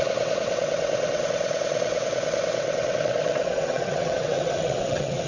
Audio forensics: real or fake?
fake